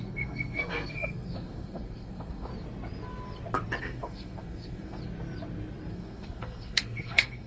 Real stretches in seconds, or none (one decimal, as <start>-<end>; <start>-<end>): 2.5-3.8; 5.0-5.9